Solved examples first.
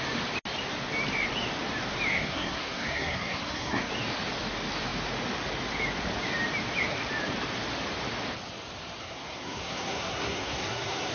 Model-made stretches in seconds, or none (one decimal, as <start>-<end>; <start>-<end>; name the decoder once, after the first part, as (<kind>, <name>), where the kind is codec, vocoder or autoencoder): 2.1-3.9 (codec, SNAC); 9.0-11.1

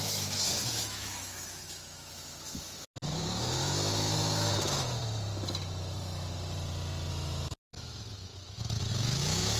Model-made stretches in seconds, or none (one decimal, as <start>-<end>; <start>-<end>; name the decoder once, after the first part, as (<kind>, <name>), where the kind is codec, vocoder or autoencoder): 0.0-5.0 (autoencoder, DAC-VAE); 7.1-9.6

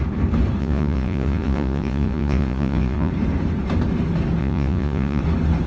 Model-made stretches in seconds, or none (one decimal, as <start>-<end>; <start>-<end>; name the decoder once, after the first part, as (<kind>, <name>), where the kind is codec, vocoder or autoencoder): 0.6-3.1 (vocoder, Vocos); 4.4-5.2